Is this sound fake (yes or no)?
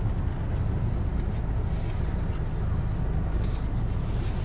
no